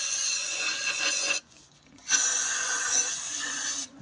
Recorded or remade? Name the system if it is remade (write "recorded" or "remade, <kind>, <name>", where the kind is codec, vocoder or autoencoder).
remade, vocoder, Vocos